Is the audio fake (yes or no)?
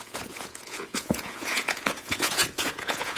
yes